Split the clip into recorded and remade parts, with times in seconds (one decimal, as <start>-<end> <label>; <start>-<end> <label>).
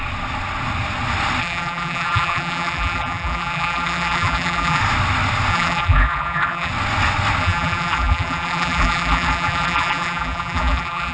0.0-1.4 recorded; 1.4-4.8 remade; 4.8-5.5 recorded; 5.5-6.7 remade; 6.7-7.4 recorded; 7.4-11.1 remade